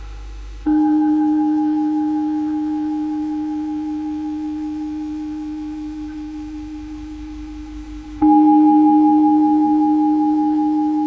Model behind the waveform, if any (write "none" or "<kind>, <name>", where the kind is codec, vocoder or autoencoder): autoencoder, DAC-VAE